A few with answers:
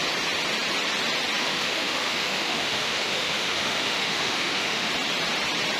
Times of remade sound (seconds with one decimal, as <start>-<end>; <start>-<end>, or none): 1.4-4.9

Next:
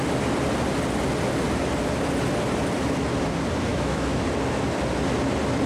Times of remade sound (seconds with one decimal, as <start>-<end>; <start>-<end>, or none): 3.7-4.2

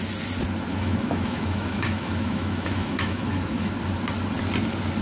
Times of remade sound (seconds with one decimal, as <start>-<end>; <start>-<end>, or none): 0.7-3.7

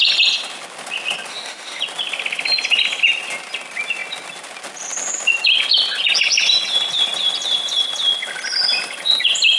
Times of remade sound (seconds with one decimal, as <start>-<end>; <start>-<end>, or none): 1.3-1.8

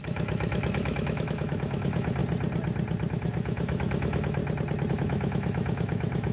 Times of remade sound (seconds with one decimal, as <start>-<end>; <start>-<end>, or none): 0.0-2.2; 3.1-4.4; 4.9-6.3

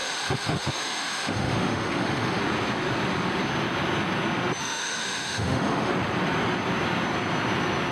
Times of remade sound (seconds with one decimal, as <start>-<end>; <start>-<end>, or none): 0.0-2.4; 4.6-5.9